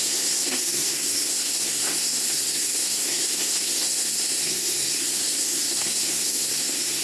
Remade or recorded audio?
remade